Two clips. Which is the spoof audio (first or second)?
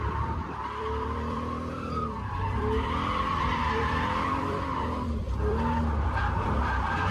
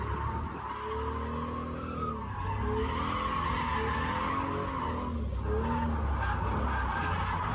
first